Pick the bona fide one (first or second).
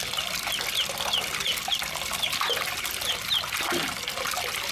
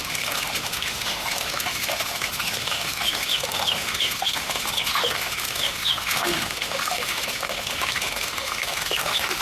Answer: first